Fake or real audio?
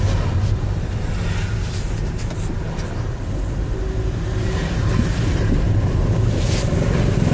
real